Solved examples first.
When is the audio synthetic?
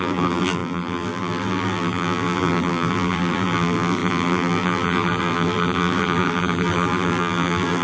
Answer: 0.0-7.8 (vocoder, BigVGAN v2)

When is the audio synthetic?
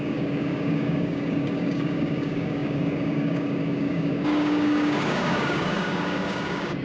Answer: 0.0-6.8 (codec, DAC)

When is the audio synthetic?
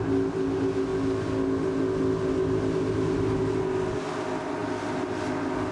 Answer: none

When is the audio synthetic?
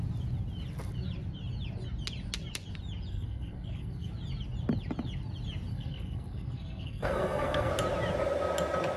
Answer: 3.1-4.1 (codec, SNAC); 5.7-7.7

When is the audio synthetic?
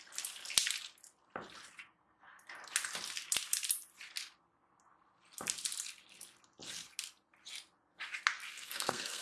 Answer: 8.5-9.2 (codec, SNAC)